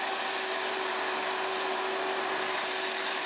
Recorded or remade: recorded